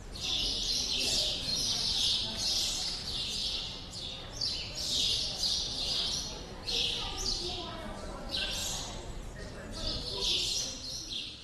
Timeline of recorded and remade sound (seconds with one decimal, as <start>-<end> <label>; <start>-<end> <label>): 0.0-1.5 remade; 1.5-6.2 recorded; 6.2-8.6 remade; 8.6-10.3 recorded; 10.3-11.4 remade